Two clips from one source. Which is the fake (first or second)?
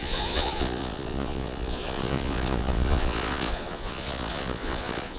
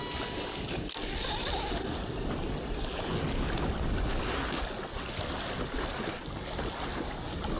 first